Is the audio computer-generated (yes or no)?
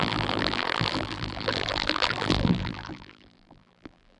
yes